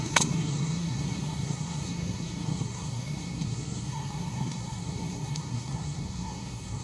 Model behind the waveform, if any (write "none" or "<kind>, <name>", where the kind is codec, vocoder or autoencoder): codec, SNAC